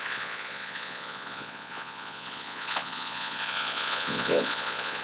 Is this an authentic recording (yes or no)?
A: no